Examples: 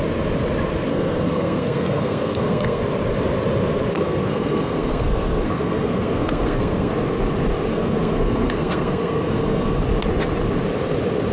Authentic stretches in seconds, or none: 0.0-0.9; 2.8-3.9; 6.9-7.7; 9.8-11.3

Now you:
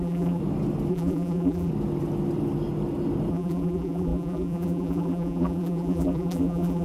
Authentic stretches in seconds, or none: 0.4-0.9; 1.7-3.3

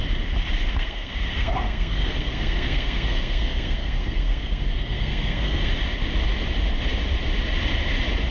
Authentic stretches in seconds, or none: 0.0-0.7; 5.7-8.3

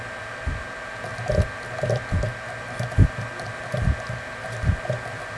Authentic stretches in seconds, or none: 0.0-5.4